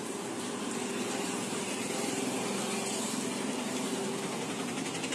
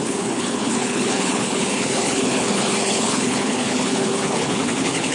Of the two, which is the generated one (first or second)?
second